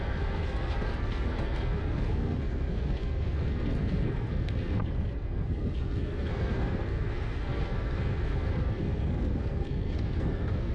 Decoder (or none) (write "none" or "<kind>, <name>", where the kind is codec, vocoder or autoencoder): codec, SNAC